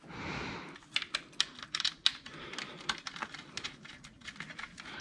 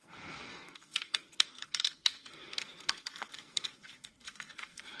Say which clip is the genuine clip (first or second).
first